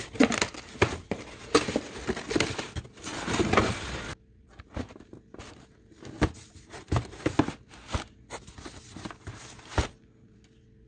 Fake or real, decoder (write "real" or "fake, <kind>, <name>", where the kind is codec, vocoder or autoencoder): real